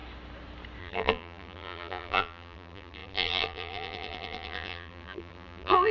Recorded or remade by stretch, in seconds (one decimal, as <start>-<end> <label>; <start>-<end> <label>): 0.0-0.8 recorded; 0.8-5.9 remade